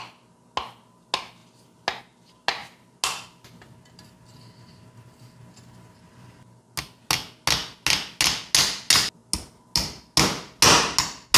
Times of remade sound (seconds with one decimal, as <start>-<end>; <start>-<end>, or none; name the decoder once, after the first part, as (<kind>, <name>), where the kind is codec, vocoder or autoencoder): none